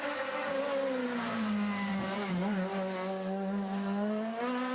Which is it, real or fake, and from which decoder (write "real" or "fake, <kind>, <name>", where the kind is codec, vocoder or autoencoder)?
real